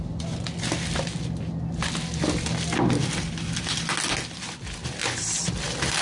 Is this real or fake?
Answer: real